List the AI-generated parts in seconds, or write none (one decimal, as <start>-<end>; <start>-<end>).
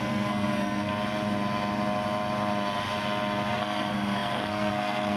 0.0-0.9; 3.5-5.2